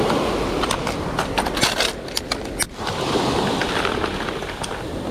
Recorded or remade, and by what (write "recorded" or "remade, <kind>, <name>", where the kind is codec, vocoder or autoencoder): recorded